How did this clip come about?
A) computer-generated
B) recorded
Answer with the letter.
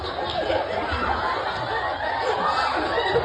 B